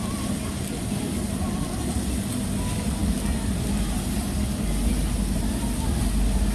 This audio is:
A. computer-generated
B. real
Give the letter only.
B